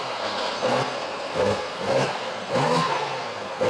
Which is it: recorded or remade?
remade